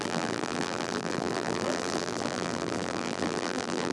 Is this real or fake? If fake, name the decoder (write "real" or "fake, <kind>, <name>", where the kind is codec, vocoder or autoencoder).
fake, vocoder, BigVGAN v2